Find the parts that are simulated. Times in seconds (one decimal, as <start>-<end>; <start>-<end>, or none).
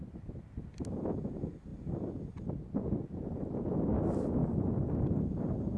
none